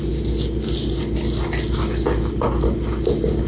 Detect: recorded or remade recorded